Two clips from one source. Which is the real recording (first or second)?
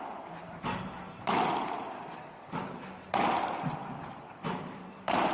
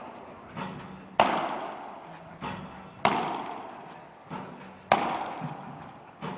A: second